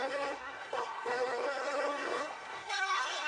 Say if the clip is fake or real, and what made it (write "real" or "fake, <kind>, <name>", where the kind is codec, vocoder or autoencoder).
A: fake, codec, SNAC